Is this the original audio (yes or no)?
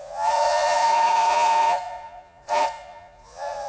no